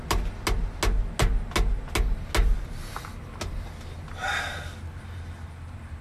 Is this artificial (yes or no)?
no